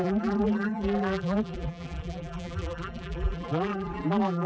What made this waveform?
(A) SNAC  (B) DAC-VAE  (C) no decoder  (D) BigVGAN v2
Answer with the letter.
D